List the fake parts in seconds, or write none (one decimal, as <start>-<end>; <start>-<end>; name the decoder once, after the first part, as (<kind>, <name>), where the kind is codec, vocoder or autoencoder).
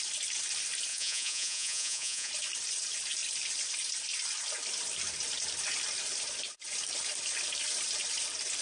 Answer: 0.9-2.3 (vocoder, Vocos)